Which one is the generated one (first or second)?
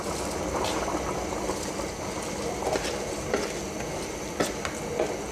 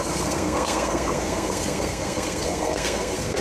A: second